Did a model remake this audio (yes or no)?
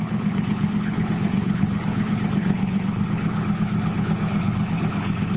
yes